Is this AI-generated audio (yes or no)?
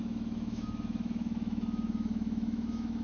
yes